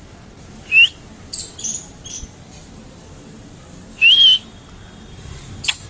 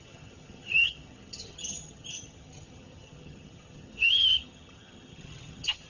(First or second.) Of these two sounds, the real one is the first